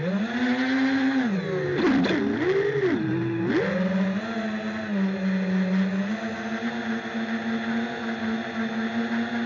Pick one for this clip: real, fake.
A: real